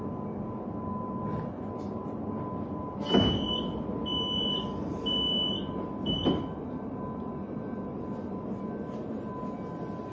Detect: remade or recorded recorded